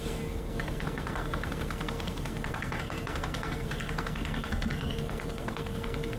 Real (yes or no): no